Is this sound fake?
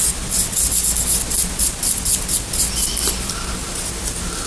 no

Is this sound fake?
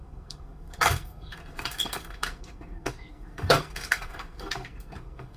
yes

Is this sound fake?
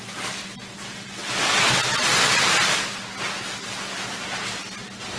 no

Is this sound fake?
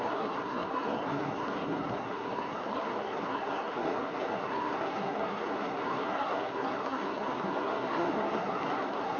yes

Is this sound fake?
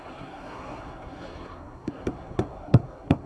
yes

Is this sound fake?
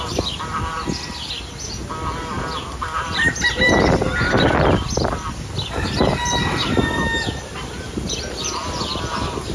no